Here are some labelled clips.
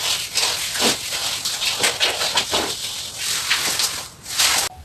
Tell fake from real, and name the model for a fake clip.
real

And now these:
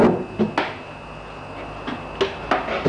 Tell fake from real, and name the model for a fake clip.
real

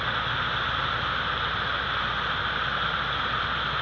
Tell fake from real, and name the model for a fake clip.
real